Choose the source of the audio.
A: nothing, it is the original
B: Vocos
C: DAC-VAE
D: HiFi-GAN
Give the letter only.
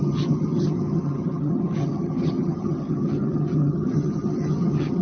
D